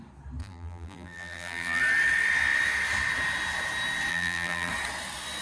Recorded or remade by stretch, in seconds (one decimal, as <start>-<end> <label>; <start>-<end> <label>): 0.0-0.4 recorded; 0.4-1.8 remade; 1.8-4.1 recorded; 4.1-4.7 remade; 4.7-5.4 recorded